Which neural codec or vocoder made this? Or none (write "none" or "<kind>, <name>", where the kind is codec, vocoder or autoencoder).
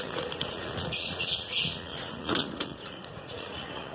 vocoder, Vocos